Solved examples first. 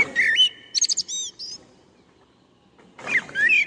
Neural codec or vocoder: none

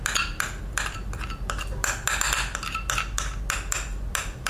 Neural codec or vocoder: none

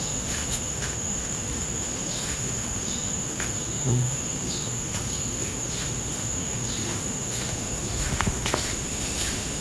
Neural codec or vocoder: autoencoder, DAC-VAE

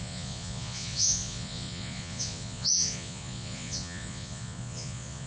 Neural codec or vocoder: vocoder, Vocos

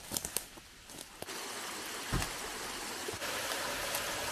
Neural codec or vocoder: none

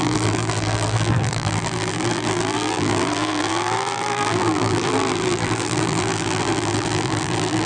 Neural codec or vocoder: vocoder, BigVGAN v2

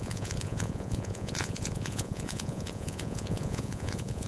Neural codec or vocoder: vocoder, Vocos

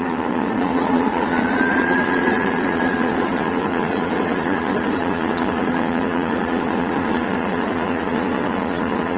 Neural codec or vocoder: vocoder, Vocos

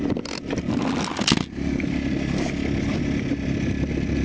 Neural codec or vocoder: none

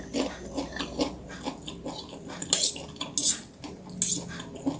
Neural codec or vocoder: none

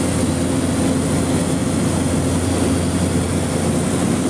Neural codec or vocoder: none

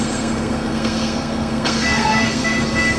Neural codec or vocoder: codec, SNAC